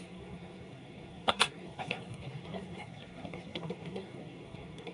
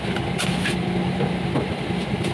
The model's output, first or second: first